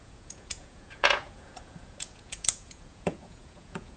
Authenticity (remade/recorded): remade